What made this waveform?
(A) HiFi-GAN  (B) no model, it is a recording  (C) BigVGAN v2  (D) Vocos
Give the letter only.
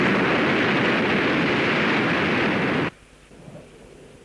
B